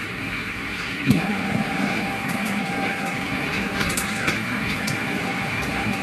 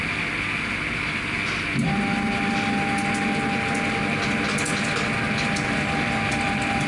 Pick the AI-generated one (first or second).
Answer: first